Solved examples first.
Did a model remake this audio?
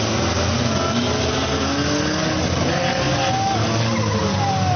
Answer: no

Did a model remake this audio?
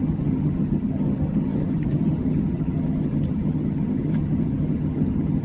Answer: yes